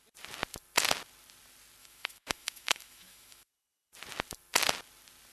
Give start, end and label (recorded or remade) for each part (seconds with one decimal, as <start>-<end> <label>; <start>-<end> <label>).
0.0-1.8 recorded; 1.8-3.5 remade; 3.5-5.3 recorded